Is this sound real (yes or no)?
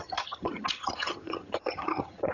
no